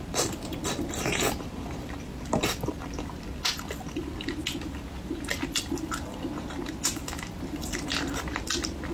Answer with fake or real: real